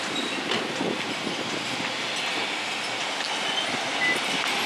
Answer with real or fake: real